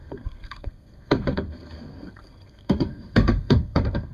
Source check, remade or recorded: remade